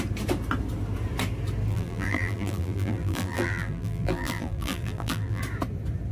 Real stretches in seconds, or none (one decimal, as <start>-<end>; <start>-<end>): 0.0-1.7; 5.4-6.1